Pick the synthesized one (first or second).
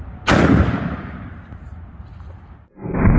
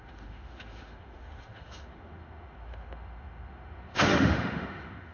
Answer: second